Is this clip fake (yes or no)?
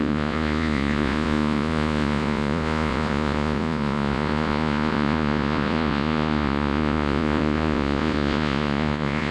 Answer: yes